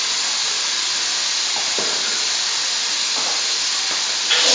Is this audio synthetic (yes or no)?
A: no